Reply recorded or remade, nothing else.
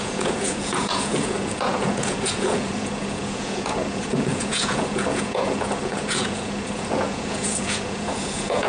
remade